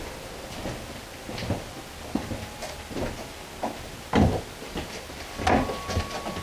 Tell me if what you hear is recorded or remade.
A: recorded